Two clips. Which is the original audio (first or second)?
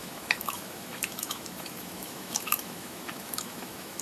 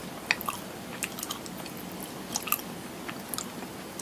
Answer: second